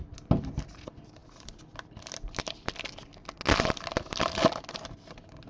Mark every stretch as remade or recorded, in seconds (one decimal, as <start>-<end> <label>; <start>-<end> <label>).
0.0-5.5 recorded